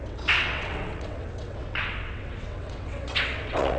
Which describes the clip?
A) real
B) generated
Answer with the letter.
B